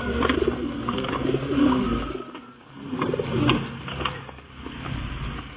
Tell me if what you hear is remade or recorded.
recorded